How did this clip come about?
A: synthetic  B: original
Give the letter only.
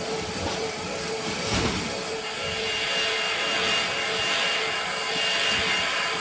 B